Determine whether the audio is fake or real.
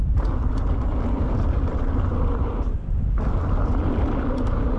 real